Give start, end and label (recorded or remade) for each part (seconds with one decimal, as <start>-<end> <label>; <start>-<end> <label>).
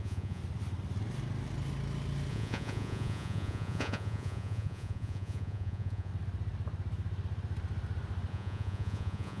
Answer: 0.0-0.4 remade; 0.4-2.3 recorded; 2.3-6.1 remade; 6.1-8.3 recorded; 8.3-9.4 remade